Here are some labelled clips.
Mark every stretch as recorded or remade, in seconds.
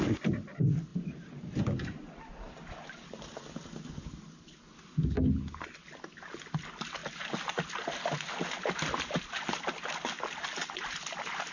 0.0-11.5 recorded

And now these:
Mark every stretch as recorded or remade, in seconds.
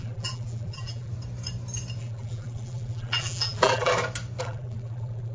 0.0-1.1 remade; 1.1-2.0 recorded; 2.0-3.9 remade; 3.9-4.4 recorded; 4.4-5.3 remade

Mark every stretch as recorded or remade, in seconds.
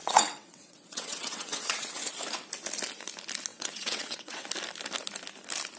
0.0-2.1 remade; 2.1-3.5 recorded; 3.5-4.5 remade; 4.5-5.8 recorded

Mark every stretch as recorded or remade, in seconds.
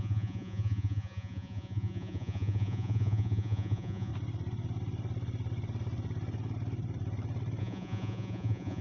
0.0-4.1 remade; 4.1-7.6 recorded; 7.6-8.8 remade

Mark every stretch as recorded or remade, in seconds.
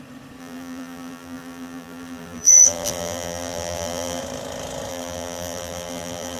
0.0-0.4 recorded; 0.4-4.2 remade; 4.2-4.9 recorded; 4.9-6.4 remade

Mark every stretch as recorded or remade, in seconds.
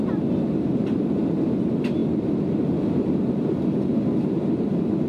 0.0-5.1 recorded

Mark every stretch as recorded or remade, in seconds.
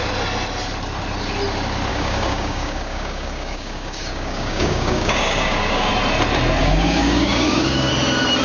0.0-1.9 recorded; 1.9-5.9 remade; 5.9-6.6 recorded; 6.6-7.9 remade; 7.9-8.4 recorded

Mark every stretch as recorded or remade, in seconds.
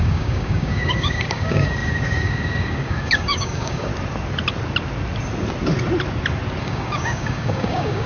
0.0-3.9 remade; 3.9-6.6 recorded; 6.6-8.1 remade